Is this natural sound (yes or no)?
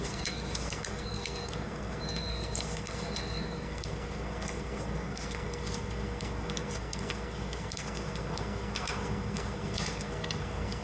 no